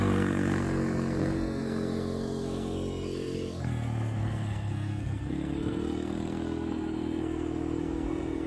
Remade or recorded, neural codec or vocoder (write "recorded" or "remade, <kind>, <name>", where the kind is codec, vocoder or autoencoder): remade, codec, SNAC